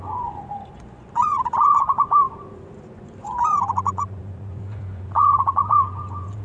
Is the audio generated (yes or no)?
yes